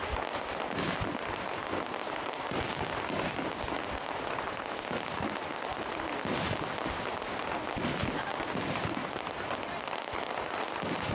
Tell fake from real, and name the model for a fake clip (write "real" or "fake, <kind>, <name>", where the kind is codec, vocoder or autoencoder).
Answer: real